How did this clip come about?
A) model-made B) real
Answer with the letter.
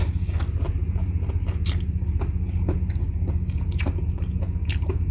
B